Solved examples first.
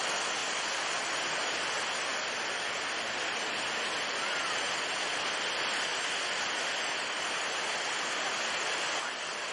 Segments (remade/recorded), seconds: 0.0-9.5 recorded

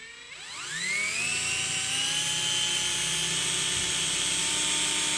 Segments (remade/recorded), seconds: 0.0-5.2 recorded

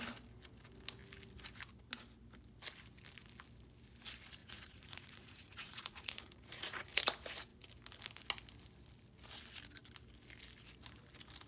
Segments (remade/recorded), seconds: 0.0-4.4 recorded; 4.4-7.0 remade; 7.0-11.5 recorded